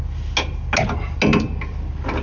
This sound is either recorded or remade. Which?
recorded